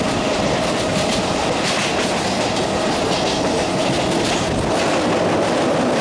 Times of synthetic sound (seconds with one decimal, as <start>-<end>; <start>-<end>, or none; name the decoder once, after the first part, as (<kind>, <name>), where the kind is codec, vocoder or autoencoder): none